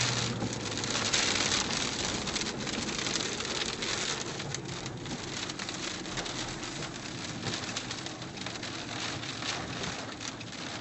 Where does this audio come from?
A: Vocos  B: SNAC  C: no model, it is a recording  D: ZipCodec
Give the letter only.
C